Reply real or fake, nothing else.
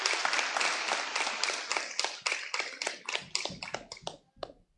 real